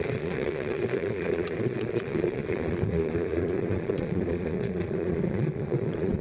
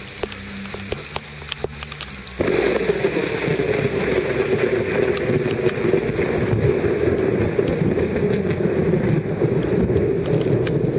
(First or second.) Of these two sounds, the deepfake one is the first